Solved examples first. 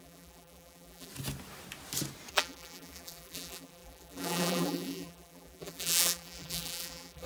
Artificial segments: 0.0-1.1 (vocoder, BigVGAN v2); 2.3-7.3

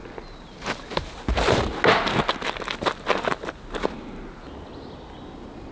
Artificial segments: none

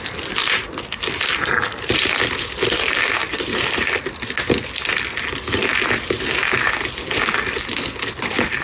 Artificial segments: none

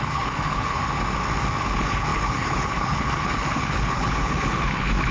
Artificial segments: 0.0-0.8 (codec, HILCodec); 1.6-5.1

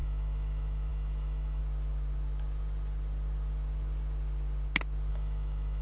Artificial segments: 0.0-1.6 (autoencoder, DAC-VAE); 5.1-5.8

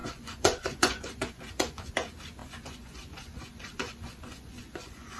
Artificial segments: 0.0-1.9 (vocoder, Vocos); 2.4-5.2

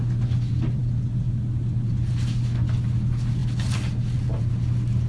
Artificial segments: none

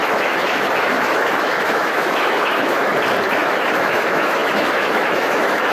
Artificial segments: 0.0-2.9 (autoencoder, DAC-VAE); 3.4-5.7